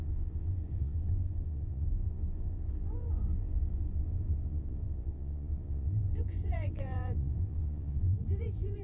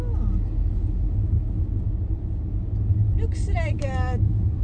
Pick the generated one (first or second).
first